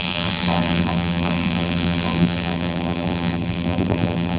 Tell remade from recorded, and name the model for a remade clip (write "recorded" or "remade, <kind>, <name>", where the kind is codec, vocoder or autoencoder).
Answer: remade, vocoder, BigVGAN v2